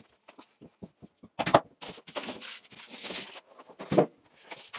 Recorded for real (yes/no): yes